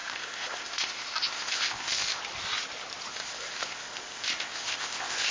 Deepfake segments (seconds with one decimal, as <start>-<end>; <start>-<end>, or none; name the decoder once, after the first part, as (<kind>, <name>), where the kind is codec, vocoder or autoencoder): 0.0-2.2 (codec, ZipCodec); 3.1-5.3